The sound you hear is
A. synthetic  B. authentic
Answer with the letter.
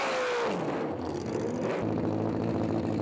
B